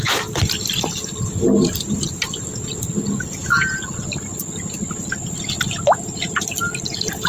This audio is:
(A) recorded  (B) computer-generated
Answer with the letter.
A